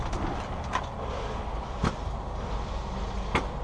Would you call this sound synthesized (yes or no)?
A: no